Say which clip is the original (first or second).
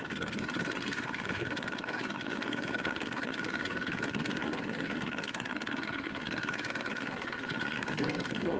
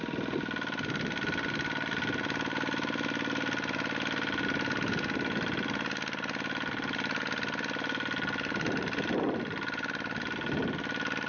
second